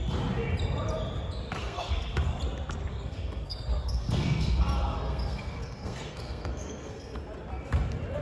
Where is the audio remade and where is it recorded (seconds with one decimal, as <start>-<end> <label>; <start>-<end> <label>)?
0.0-1.6 recorded; 1.6-2.4 remade; 2.4-2.9 recorded; 2.9-7.2 remade; 7.2-8.2 recorded